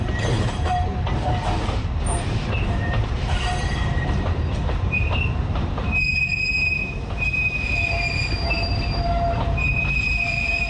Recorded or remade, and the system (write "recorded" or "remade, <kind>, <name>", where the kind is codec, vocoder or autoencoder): remade, vocoder, BigVGAN v2